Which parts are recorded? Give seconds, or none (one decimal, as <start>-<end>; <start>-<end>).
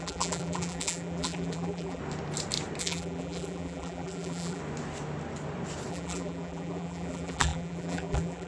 2.0-2.8; 4.6-5.9